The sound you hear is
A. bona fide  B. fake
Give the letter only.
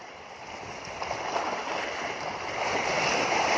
A